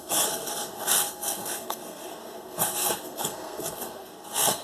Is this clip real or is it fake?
fake